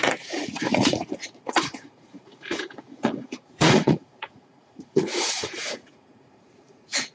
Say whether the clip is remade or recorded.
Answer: remade